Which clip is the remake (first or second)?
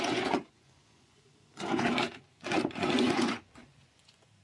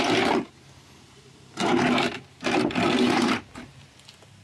first